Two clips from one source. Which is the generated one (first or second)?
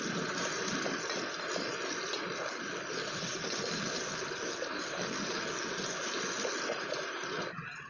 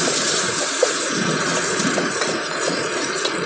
second